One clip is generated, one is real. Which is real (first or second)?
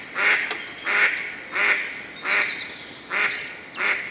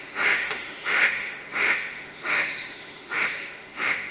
first